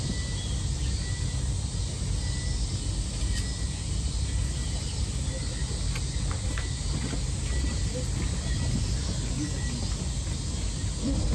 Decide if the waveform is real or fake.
real